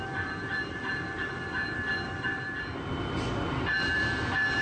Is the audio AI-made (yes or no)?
yes